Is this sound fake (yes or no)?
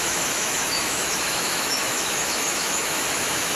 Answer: yes